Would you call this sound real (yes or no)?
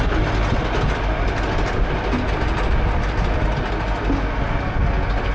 yes